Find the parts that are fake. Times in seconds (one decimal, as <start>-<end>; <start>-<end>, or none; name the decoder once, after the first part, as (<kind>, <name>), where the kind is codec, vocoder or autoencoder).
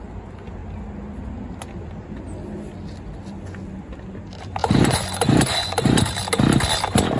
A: 4.6-6.0 (vocoder, Vocos)